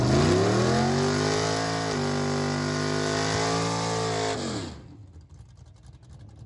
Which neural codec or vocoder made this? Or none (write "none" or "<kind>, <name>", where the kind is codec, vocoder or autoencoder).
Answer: none